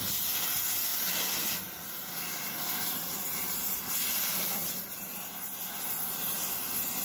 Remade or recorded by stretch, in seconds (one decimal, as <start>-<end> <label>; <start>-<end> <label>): 0.0-3.3 recorded; 3.3-5.3 remade; 5.3-7.0 recorded